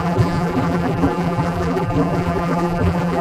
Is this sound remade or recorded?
remade